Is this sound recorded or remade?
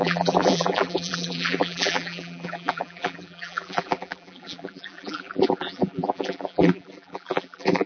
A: remade